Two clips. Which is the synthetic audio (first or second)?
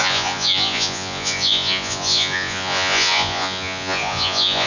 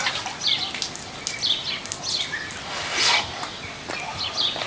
first